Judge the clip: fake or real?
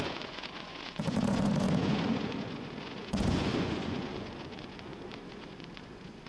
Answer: fake